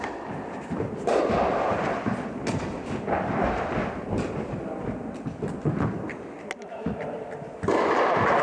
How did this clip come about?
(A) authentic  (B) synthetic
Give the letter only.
A